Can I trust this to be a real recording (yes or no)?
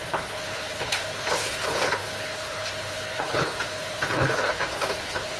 no